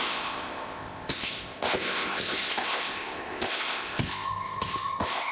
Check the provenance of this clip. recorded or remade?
remade